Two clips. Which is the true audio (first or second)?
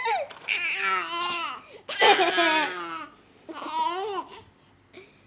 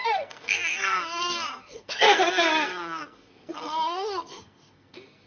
first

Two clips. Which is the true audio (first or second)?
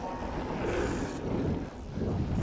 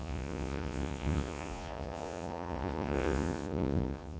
first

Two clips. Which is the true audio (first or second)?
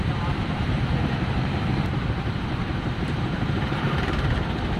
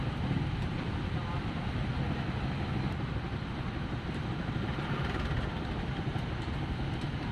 second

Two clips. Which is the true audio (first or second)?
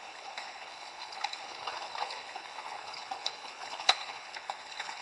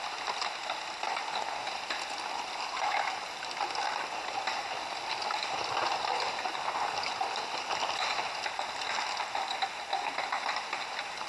second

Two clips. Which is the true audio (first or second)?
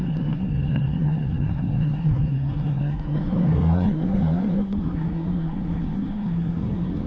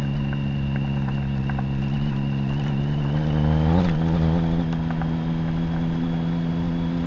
second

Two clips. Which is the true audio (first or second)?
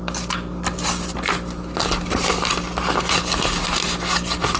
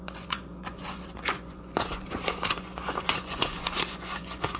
first